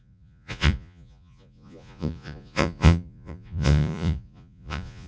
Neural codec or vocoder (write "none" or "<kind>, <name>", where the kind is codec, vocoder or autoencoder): vocoder, Vocos